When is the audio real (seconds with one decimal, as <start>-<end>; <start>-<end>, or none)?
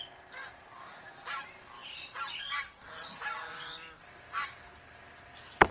0.0-0.4; 1.0-1.8; 4.3-5.7